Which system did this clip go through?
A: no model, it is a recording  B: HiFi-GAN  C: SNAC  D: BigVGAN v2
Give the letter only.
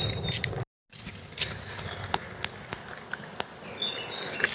A